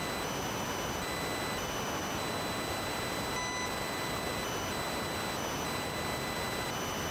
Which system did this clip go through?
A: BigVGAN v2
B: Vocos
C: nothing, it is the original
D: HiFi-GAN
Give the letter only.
C